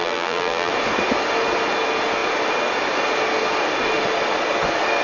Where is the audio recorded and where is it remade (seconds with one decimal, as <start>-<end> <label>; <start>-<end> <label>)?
0.0-0.7 remade; 0.7-5.0 recorded